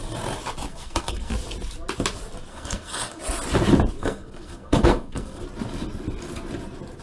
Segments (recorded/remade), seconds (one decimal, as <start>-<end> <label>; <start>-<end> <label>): 0.0-0.7 recorded; 0.7-1.3 remade; 1.3-2.5 recorded; 2.5-3.2 remade; 3.2-4.0 recorded; 4.0-5.4 remade; 5.4-7.0 recorded